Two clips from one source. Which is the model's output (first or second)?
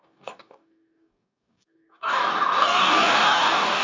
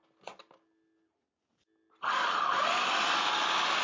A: first